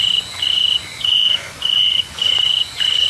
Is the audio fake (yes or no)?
yes